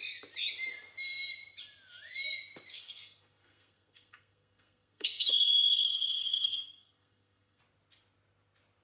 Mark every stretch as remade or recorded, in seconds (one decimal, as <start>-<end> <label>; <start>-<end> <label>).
0.0-2.7 recorded; 2.7-7.6 remade; 7.6-8.8 recorded